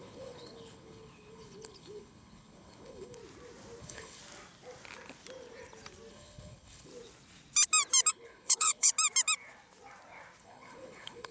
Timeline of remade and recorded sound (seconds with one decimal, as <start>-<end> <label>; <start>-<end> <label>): 0.0-3.2 remade; 3.2-3.8 recorded; 3.8-4.2 remade; 4.2-6.1 recorded; 6.1-6.9 remade; 6.9-8.1 recorded; 8.1-8.9 remade; 8.9-10.4 recorded; 10.4-11.3 remade